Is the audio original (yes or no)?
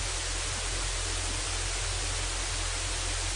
yes